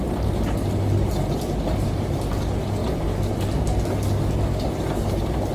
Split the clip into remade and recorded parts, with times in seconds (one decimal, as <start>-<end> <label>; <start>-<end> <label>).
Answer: 0.0-5.5 recorded